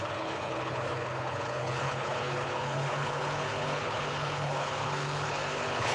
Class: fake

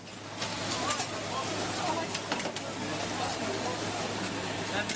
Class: real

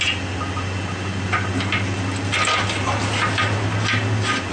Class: real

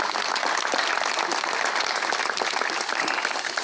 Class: real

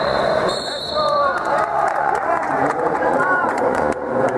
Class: fake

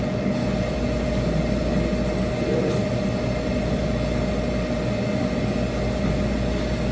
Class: real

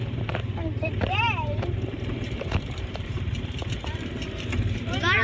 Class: fake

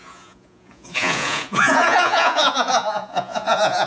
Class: fake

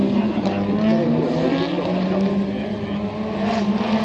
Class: real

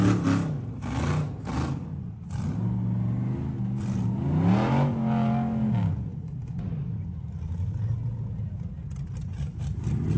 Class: real